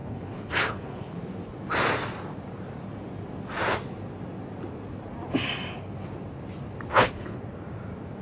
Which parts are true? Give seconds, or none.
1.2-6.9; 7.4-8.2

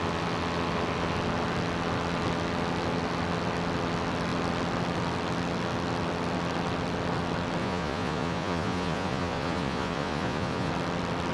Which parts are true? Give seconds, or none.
0.0-7.6; 10.7-11.3

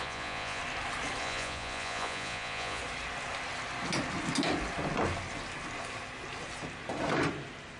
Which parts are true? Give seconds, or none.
0.6-1.2; 2.8-7.8

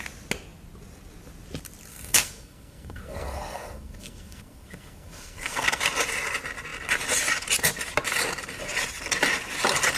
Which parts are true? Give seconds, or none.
0.0-1.9; 5.8-10.0

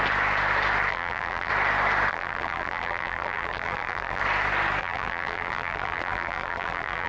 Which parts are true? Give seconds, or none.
0.0-0.9; 1.5-2.1; 4.2-4.8

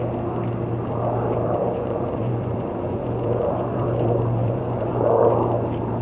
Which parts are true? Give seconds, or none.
0.0-1.6; 5.2-6.0

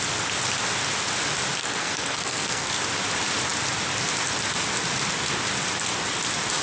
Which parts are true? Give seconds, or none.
0.0-1.6; 2.7-6.6

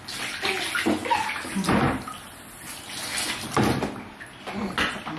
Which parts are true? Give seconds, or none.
0.0-5.2